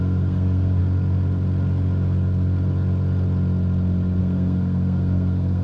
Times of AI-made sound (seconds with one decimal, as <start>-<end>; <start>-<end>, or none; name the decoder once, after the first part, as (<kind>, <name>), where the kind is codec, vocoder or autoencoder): 0.0-0.8 (codec, SNAC); 4.2-5.6